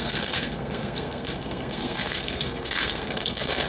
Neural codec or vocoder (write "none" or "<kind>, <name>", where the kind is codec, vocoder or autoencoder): codec, SNAC